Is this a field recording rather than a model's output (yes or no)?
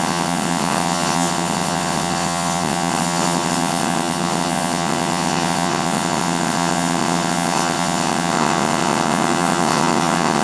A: no